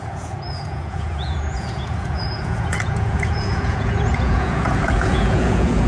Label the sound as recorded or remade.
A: remade